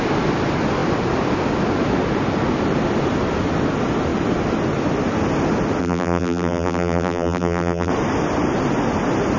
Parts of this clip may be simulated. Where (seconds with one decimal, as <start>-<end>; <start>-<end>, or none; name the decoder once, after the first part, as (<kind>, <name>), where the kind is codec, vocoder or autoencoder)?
5.8-7.9 (vocoder, BigVGAN v2)